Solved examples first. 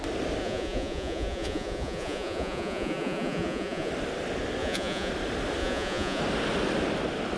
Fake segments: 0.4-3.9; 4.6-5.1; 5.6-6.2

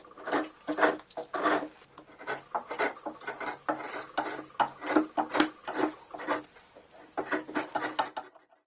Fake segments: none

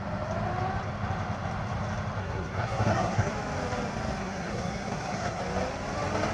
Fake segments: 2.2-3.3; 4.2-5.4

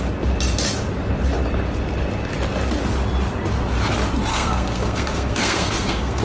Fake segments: 4.3-6.2